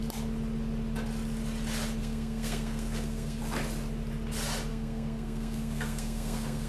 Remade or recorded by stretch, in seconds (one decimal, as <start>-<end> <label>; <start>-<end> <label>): 0.0-2.0 recorded; 2.0-3.4 remade; 3.4-4.7 recorded; 4.7-6.7 remade